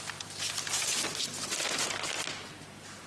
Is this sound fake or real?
real